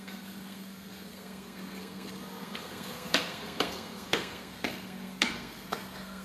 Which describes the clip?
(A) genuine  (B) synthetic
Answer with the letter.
B